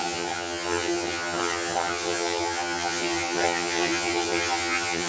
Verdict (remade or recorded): remade